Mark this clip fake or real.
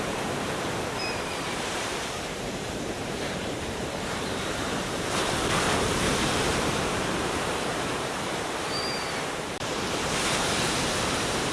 fake